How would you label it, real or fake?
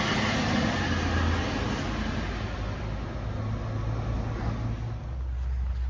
real